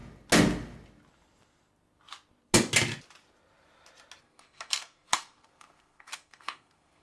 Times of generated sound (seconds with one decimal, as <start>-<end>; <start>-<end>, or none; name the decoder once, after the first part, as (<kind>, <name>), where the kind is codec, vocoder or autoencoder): 4.2-7.0 (codec, SNAC)